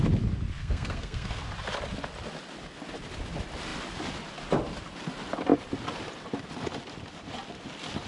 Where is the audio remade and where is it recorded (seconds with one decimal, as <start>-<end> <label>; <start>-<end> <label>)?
0.0-0.6 recorded; 0.6-1.4 remade; 1.4-8.1 recorded